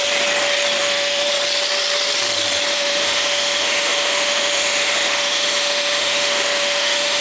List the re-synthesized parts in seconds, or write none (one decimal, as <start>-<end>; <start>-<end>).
0.8-1.3; 2.7-7.2

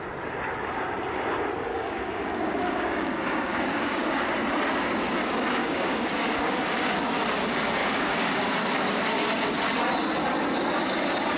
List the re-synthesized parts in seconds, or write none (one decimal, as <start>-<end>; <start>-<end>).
1.7-4.2; 5.6-7.2; 7.8-9.5

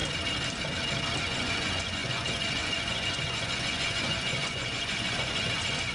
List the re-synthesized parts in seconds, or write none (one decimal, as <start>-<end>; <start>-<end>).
1.2-5.9

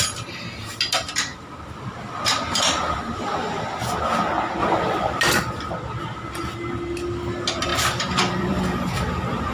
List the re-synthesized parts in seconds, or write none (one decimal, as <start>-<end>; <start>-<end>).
1.3-3.2; 7.7-8.6

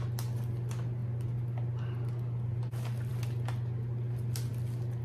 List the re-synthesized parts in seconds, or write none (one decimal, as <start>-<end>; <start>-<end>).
none

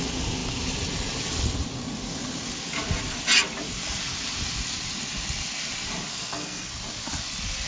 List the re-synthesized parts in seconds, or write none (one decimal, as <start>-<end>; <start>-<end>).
6.1-6.7